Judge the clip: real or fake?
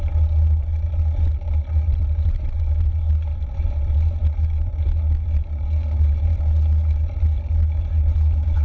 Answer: real